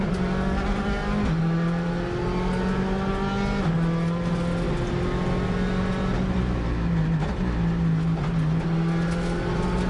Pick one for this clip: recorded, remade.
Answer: recorded